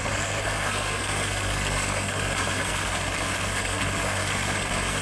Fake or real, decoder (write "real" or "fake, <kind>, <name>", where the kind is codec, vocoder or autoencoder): fake, codec, SNAC